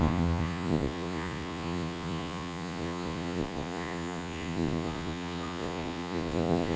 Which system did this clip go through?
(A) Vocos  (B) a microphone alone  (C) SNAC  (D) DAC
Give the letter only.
A